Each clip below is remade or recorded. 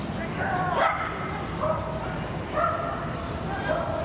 recorded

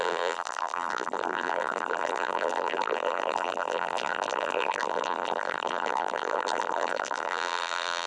remade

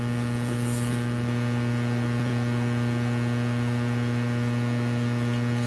recorded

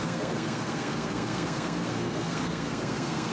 remade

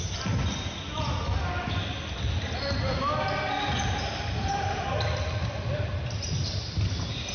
recorded